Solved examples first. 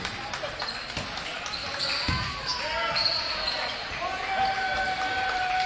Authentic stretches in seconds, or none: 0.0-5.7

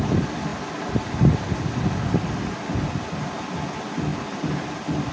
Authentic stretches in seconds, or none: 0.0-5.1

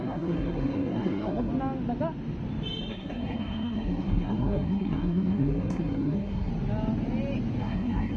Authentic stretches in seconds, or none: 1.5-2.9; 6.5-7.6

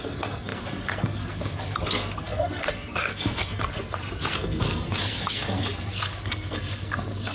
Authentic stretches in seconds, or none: none